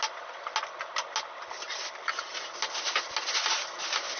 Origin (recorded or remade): recorded